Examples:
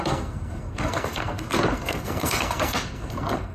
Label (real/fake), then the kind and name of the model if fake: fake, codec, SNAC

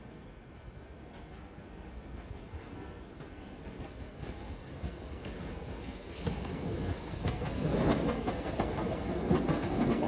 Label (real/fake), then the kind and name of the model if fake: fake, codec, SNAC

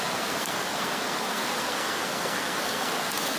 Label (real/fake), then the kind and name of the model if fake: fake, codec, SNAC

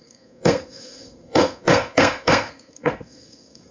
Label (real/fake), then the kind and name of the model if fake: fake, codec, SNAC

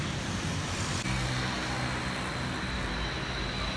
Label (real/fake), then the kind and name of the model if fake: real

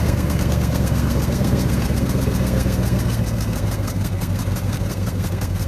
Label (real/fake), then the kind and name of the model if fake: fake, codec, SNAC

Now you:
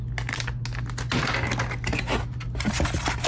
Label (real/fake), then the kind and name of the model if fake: real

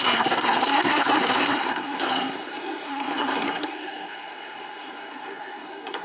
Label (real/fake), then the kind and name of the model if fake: fake, codec, SNAC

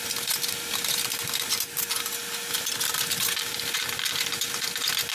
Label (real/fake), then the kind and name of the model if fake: real